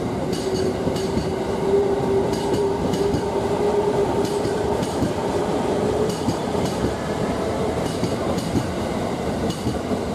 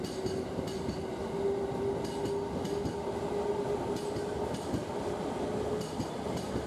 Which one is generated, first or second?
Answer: first